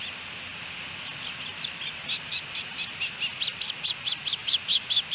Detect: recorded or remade recorded